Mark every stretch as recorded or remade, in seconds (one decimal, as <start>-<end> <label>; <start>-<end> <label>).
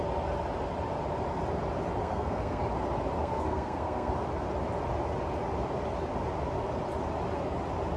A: 0.0-2.0 recorded; 2.0-2.6 remade; 2.6-3.2 recorded; 3.2-4.1 remade; 4.1-8.0 recorded